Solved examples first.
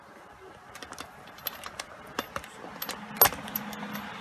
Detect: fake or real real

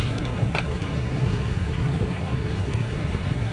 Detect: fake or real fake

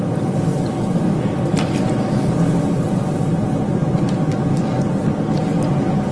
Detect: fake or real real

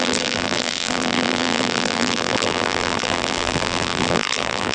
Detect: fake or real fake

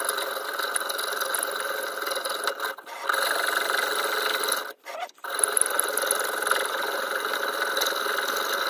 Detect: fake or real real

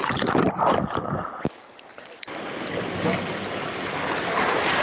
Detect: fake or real real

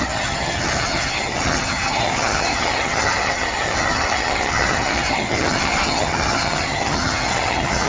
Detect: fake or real fake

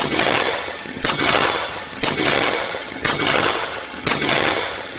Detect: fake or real fake